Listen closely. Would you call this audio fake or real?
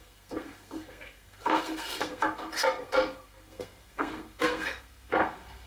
fake